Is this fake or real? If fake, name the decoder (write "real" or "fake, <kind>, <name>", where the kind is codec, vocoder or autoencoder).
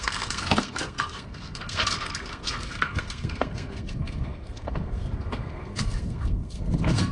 fake, codec, SNAC